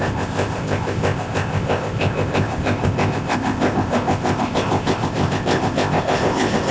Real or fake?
fake